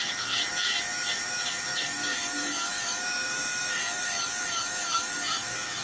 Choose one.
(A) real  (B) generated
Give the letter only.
B